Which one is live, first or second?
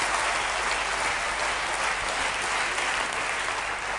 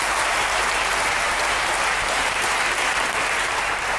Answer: first